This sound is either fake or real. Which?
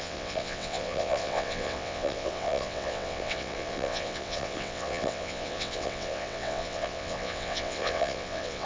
fake